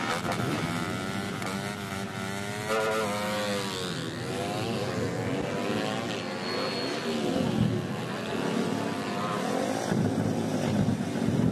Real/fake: real